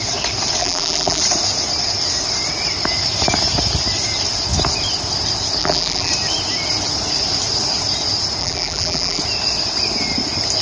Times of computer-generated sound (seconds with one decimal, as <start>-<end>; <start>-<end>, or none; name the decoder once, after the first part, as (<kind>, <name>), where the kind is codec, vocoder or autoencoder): 0.6-1.2 (vocoder, BigVGAN v2); 5.6-6.1; 8.4-9.2